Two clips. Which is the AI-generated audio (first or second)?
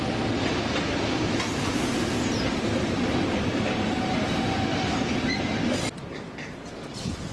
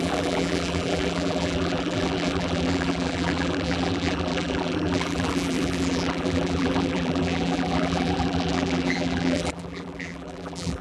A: second